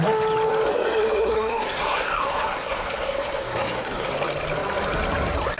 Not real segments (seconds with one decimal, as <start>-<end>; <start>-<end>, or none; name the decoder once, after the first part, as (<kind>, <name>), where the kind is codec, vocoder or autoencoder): 0.7-4.1 (codec, SNAC)

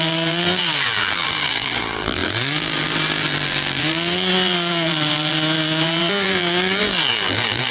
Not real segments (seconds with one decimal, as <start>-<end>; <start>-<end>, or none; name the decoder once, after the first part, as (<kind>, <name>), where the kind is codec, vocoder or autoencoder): 0.0-7.7 (vocoder, BigVGAN v2)